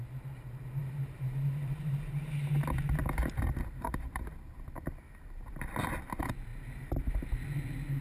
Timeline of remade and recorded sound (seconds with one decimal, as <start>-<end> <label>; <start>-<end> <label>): 0.0-0.8 recorded; 0.8-4.9 remade; 4.9-6.5 recorded; 6.5-7.4 remade; 7.4-8.0 recorded